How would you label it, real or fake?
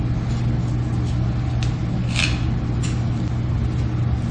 real